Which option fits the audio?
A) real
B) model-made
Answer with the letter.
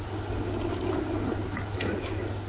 A